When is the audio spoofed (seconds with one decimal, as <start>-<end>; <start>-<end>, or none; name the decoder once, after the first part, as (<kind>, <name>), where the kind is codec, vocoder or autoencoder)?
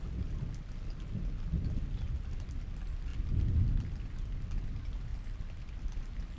none